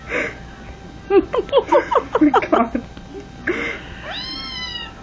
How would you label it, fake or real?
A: real